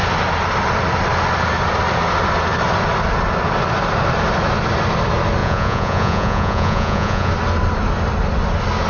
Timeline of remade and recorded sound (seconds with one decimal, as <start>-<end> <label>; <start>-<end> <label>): 0.0-5.4 recorded; 5.4-7.3 remade; 7.3-8.9 recorded